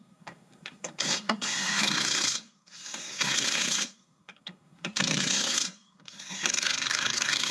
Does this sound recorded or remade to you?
remade